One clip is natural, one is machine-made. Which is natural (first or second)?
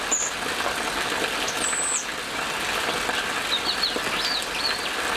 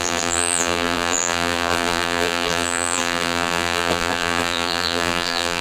first